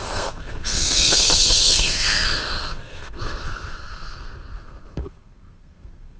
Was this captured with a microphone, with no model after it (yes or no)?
no